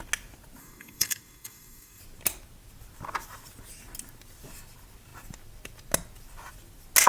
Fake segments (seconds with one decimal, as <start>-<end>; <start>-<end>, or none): 0.6-2.0